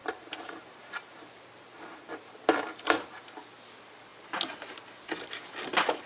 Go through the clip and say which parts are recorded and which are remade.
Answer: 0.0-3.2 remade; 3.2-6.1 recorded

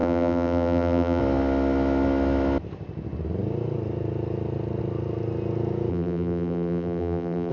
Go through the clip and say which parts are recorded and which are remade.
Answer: 0.0-1.2 remade; 1.2-5.9 recorded; 5.9-7.5 remade

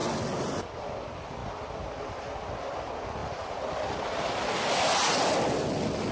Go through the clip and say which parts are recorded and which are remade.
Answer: 0.0-6.1 recorded